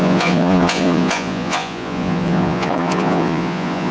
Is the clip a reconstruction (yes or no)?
yes